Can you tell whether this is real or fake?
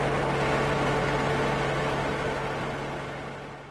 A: real